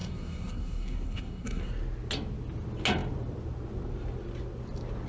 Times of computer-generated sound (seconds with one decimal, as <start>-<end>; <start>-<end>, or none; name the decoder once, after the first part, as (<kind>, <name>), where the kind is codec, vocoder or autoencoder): 0.0-1.7 (codec, SNAC)